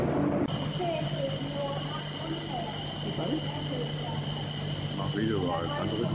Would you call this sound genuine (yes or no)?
yes